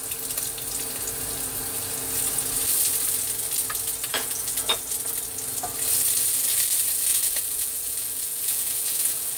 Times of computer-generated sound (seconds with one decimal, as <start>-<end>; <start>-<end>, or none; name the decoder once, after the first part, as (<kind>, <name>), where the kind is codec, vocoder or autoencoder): 4.1-4.8 (vocoder, Vocos); 7.1-9.4